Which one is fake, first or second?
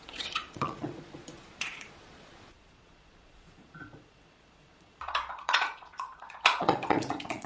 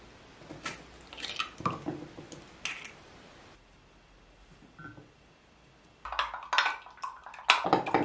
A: first